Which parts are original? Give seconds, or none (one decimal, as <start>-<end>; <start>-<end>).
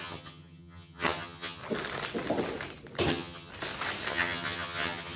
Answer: 1.6-3.1; 3.5-4.1